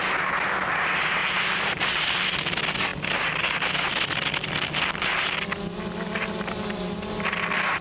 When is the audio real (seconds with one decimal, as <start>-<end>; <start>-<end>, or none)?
0.0-1.2; 2.5-7.8